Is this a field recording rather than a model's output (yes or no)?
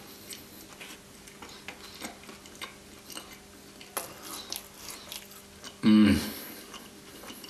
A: yes